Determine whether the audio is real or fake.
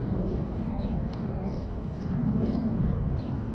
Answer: fake